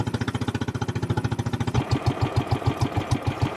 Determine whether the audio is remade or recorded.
recorded